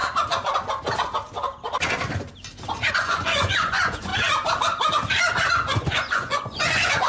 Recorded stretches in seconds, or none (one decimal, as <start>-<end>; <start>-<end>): 0.0-2.9; 4.1-5.5